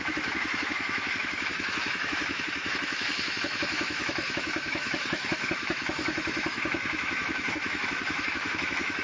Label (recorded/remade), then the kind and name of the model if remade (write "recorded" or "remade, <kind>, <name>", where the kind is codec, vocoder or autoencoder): remade, autoencoder, DAC-VAE